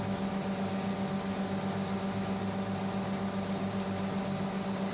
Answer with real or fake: real